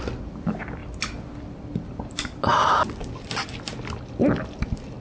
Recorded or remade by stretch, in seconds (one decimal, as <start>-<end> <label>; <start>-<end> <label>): 0.0-5.0 recorded

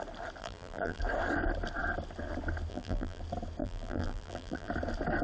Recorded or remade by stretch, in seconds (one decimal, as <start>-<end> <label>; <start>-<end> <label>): 0.0-0.4 recorded; 0.4-1.0 remade; 1.0-2.7 recorded; 2.7-3.2 remade; 3.2-3.6 recorded; 3.6-4.7 remade; 4.7-5.2 recorded

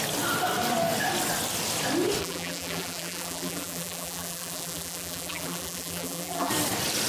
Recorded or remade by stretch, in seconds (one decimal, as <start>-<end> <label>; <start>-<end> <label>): 0.0-2.2 recorded; 2.2-6.5 remade; 6.5-7.1 recorded